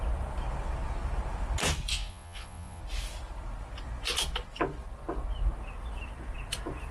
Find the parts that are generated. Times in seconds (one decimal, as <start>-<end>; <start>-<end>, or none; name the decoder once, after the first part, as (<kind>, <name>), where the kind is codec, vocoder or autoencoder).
1.9-2.8 (vocoder, Vocos)